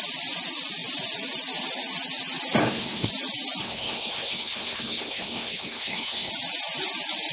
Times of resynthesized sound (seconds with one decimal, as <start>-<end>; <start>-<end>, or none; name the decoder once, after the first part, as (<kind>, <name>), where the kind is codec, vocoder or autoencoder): 2.6-3.1 (codec, SNAC); 3.6-6.3